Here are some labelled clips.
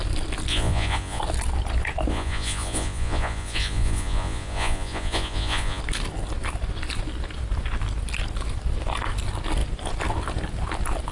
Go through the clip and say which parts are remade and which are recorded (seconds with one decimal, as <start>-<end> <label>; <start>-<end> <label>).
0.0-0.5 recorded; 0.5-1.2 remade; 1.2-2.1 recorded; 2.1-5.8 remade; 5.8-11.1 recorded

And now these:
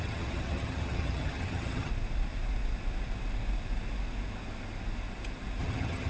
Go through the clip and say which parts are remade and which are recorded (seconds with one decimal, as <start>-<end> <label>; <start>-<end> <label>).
0.0-1.9 remade; 1.9-5.6 recorded; 5.6-6.1 remade

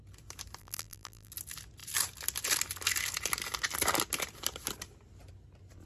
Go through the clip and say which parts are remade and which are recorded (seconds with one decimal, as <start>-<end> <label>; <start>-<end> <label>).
0.0-0.6 recorded; 0.6-1.3 remade; 1.3-5.9 recorded

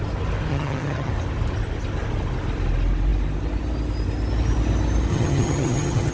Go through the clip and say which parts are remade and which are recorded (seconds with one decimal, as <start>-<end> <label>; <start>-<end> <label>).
0.0-0.5 recorded; 0.5-1.1 remade; 1.1-5.1 recorded; 5.1-6.1 remade